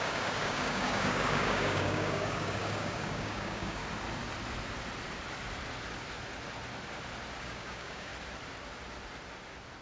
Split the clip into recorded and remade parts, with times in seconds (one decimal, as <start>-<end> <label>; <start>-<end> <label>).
0.0-3.8 remade; 3.8-7.4 recorded; 7.4-8.1 remade; 8.1-9.8 recorded